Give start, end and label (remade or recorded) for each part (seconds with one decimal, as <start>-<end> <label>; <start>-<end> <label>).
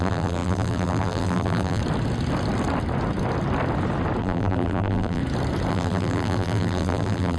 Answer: 0.0-1.8 remade; 1.8-4.2 recorded; 4.2-5.2 remade; 5.2-5.7 recorded; 5.7-7.4 remade